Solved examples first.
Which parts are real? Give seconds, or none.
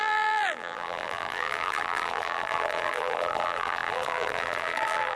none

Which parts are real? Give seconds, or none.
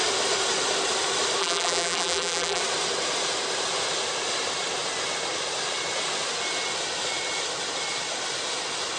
0.0-1.4; 2.6-9.0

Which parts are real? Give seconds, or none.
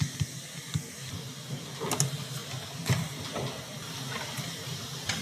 0.0-5.2